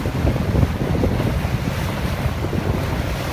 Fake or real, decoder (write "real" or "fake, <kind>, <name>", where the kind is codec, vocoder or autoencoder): real